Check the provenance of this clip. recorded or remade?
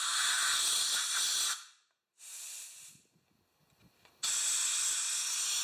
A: recorded